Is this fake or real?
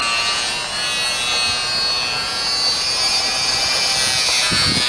real